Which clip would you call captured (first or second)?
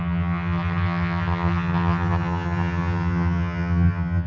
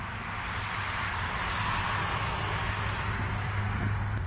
second